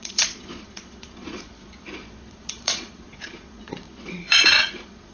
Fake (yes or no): yes